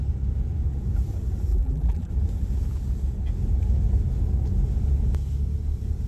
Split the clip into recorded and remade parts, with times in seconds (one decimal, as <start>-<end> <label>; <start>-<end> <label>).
0.0-1.5 recorded; 1.5-2.1 remade; 2.1-6.1 recorded